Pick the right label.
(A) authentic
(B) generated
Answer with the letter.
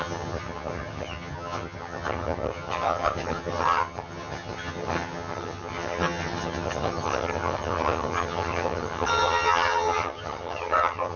B